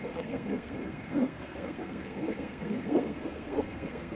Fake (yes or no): yes